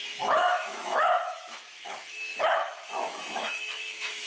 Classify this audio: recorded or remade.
remade